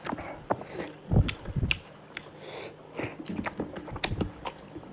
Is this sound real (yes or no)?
yes